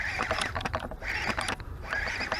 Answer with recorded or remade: remade